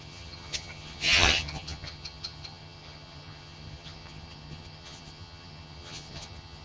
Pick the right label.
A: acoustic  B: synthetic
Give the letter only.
B